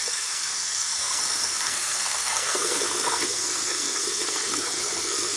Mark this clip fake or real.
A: fake